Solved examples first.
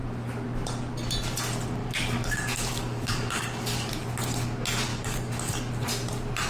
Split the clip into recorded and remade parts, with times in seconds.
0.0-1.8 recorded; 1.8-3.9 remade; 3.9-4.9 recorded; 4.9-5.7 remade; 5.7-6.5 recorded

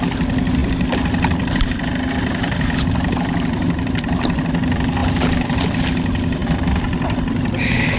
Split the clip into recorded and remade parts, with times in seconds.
0.0-0.6 recorded; 0.6-4.4 remade; 4.4-5.0 recorded; 5.0-5.8 remade; 5.8-6.4 recorded; 6.4-7.6 remade; 7.6-8.0 recorded

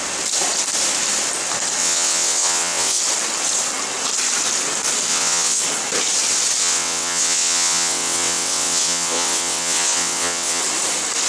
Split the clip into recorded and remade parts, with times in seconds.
0.0-1.8 recorded; 1.8-3.0 remade; 3.0-5.1 recorded; 5.1-5.6 remade; 5.6-6.6 recorded; 6.6-10.6 remade; 10.6-11.3 recorded

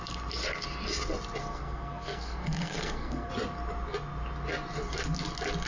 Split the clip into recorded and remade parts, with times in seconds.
0.0-1.4 recorded; 1.4-3.3 remade; 3.3-5.7 recorded

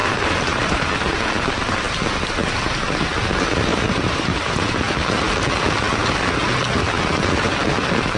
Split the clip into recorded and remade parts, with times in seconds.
0.0-1.1 remade; 1.1-3.7 recorded; 3.7-4.6 remade; 4.6-8.2 recorded

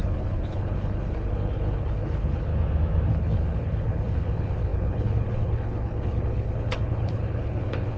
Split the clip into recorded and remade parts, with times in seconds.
0.0-2.5 remade; 2.5-3.1 recorded; 3.1-8.0 remade